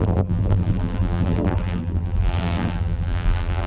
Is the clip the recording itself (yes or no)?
no